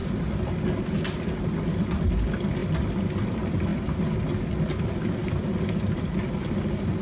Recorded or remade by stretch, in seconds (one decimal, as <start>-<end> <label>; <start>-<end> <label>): 0.0-7.0 recorded